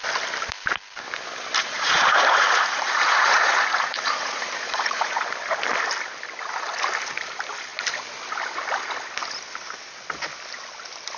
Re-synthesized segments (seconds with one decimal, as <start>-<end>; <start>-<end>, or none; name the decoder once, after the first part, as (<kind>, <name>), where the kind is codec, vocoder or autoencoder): 1.6-5.2 (vocoder, Vocos)